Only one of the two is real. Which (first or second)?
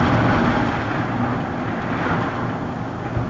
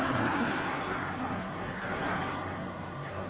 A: first